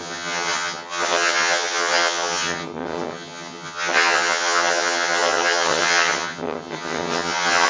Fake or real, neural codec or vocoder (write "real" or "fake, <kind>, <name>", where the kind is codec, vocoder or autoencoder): fake, vocoder, HiFi-GAN